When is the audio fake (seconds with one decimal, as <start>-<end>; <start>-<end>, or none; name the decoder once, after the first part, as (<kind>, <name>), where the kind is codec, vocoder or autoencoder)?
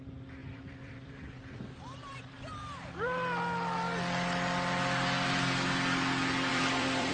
0.4-1.1 (vocoder, BigVGAN v2); 6.5-7.1